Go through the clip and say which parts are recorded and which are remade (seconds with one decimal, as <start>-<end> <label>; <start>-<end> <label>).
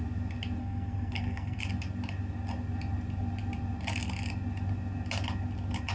0.0-0.6 recorded; 0.6-1.6 remade; 1.6-5.9 recorded